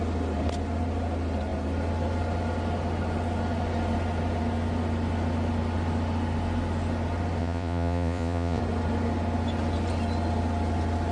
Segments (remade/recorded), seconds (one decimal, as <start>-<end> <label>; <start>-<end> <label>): 0.0-7.4 recorded; 7.4-8.6 remade; 8.6-11.1 recorded